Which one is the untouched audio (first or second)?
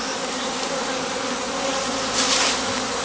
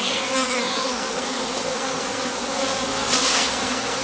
first